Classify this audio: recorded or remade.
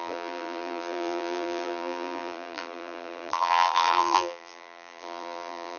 remade